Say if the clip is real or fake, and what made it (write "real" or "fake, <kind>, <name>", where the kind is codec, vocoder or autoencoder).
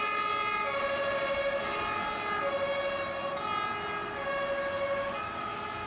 real